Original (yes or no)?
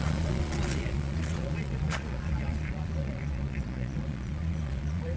no